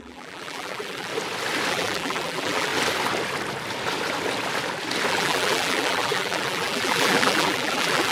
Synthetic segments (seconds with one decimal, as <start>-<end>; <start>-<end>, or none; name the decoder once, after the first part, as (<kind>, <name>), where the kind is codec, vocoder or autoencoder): 0.0-1.1 (vocoder, BigVGAN v2); 1.7-2.7; 5.1-8.1